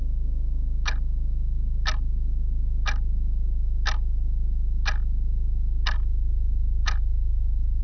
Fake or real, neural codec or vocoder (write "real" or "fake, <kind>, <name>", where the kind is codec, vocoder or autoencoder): real